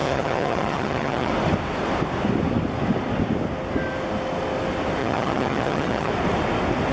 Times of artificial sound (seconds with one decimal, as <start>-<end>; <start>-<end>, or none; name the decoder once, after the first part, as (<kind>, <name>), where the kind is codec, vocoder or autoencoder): 0.0-1.3 (vocoder, HiFi-GAN); 5.0-6.1